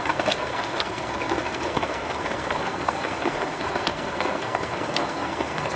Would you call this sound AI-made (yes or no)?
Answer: yes